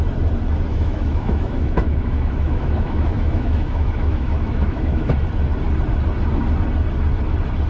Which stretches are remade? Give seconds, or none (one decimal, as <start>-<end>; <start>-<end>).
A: 0.7-5.1